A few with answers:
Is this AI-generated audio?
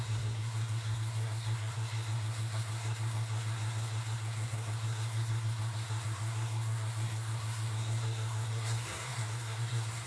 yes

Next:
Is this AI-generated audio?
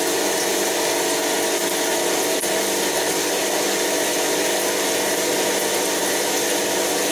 no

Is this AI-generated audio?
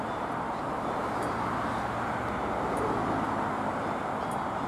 no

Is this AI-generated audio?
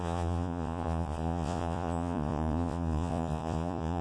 yes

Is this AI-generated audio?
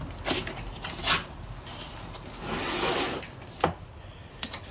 no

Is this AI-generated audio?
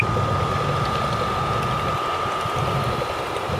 no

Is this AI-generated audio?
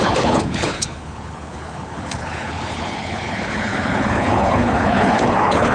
yes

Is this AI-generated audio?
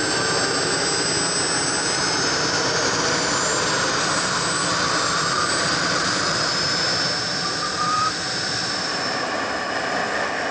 no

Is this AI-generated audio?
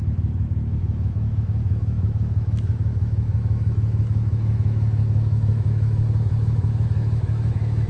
yes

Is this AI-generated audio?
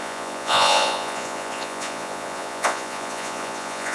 yes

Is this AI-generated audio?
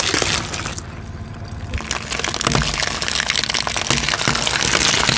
no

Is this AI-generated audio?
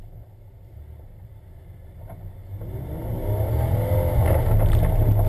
no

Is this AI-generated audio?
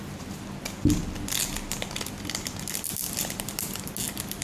no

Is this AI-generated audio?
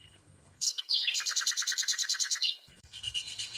yes